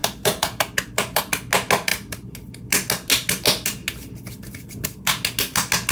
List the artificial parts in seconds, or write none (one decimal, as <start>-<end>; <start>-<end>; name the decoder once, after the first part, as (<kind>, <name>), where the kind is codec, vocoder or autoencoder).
0.0-1.2 (vocoder, BigVGAN v2)